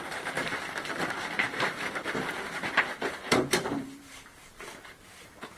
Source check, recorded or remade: remade